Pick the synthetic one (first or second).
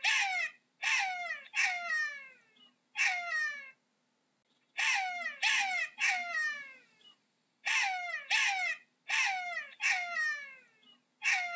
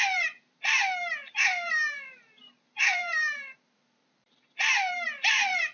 second